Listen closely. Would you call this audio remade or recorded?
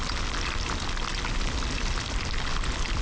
recorded